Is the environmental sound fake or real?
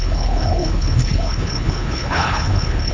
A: fake